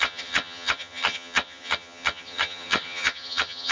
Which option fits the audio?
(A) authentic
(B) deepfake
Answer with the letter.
B